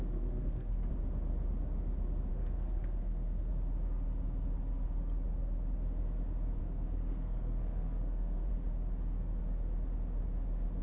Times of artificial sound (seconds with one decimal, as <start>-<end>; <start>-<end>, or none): 0.0-0.9; 2.3-3.5; 6.6-8.5